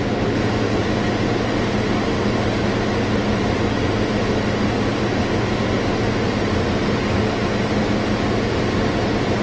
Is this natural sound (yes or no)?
yes